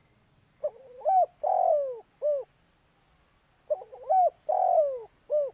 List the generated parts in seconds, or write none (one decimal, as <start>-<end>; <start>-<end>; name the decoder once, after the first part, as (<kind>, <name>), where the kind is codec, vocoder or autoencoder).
none